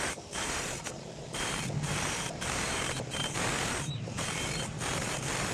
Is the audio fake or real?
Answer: fake